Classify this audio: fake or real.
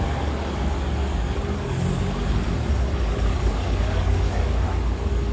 fake